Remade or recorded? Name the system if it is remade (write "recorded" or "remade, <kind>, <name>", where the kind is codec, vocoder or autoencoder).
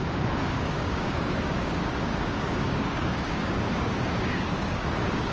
remade, codec, DAC